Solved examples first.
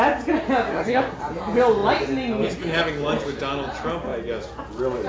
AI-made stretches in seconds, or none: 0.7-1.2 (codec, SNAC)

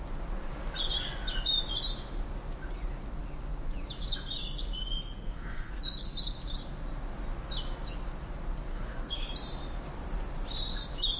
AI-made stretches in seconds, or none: 5.0-5.8 (codec, SNAC); 8.7-9.3

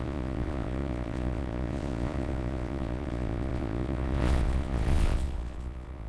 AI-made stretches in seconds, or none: 0.0-6.1 (vocoder, Vocos)

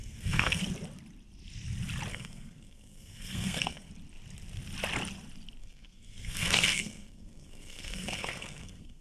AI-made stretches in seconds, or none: 0.0-0.6 (codec, SNAC); 2.1-3.9; 5.6-9.0